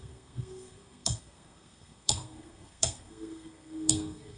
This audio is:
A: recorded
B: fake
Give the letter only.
B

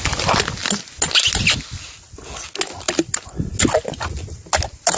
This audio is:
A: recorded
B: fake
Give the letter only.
A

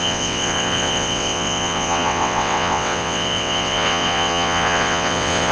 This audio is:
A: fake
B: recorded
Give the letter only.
A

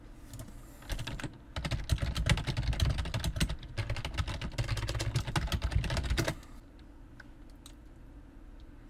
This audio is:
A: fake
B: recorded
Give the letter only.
B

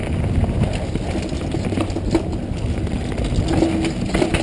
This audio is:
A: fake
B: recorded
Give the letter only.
B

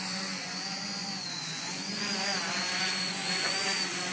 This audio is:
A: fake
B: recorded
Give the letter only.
A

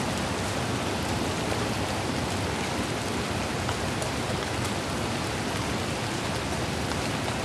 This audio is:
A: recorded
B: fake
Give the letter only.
A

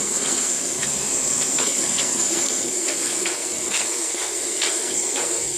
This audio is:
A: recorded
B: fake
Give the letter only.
B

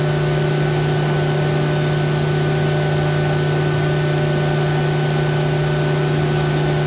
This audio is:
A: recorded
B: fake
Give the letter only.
A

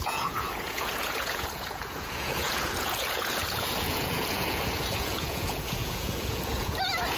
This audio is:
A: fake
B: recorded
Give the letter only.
A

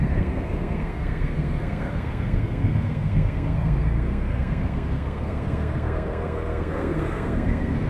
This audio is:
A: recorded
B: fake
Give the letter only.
B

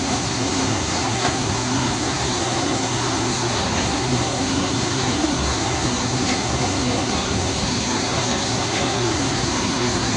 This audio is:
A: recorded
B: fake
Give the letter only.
B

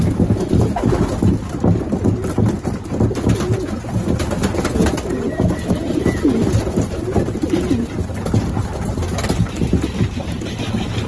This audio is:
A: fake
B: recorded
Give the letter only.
B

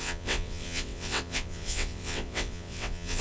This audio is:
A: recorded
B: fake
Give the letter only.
B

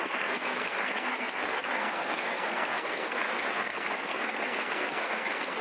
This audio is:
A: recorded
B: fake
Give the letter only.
B